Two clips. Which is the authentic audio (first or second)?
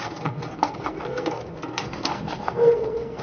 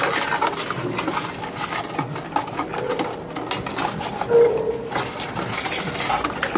second